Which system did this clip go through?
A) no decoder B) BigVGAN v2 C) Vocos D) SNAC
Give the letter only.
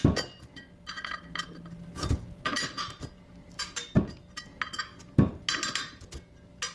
A